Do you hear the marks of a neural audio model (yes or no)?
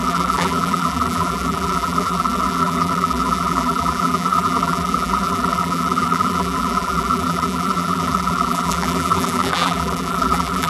yes